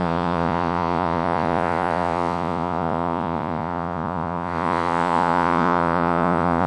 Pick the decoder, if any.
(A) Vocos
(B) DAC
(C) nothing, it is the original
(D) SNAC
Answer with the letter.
A